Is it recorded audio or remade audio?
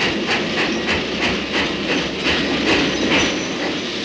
recorded